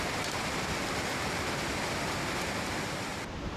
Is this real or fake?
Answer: real